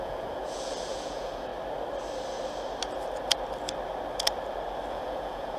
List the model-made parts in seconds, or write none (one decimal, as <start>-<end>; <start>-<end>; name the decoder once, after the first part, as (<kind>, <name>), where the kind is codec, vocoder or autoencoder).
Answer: 0.0-1.5 (vocoder, Vocos); 4.9-5.6